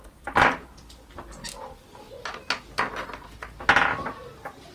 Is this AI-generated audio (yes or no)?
no